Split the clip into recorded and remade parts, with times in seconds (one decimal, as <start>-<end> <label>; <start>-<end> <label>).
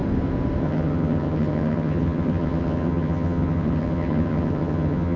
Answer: 0.0-0.6 recorded; 0.6-5.2 remade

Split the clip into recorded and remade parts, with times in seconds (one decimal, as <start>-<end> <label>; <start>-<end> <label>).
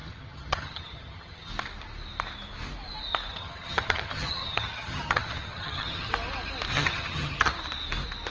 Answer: 0.0-1.5 remade; 1.5-3.3 recorded; 3.3-6.1 remade; 6.1-6.7 recorded; 6.7-7.5 remade; 7.5-8.3 recorded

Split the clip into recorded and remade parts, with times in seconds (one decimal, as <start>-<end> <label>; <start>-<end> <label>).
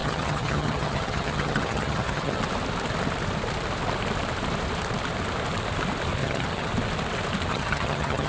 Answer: 0.0-2.4 remade; 2.4-6.2 recorded; 6.2-6.7 remade; 6.7-7.5 recorded; 7.5-8.3 remade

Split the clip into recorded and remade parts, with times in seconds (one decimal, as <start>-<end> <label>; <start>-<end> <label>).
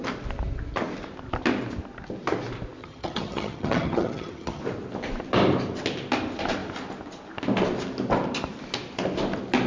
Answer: 0.0-2.8 recorded; 2.8-4.6 remade; 4.6-9.7 recorded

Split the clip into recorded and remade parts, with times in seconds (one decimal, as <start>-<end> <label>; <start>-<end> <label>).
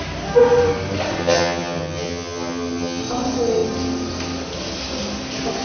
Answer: 0.0-1.2 recorded; 1.2-3.0 remade; 3.0-5.6 recorded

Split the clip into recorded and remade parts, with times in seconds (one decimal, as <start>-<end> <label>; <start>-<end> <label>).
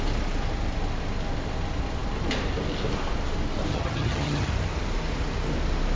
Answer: 0.0-3.7 recorded; 3.7-4.5 remade; 4.5-6.0 recorded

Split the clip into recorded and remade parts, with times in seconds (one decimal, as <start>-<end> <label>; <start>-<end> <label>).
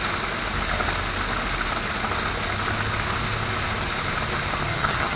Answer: 0.0-4.7 recorded; 4.7-5.2 remade